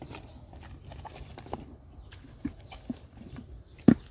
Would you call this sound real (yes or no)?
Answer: yes